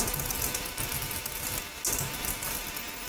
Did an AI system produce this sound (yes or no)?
no